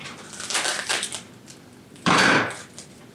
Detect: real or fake fake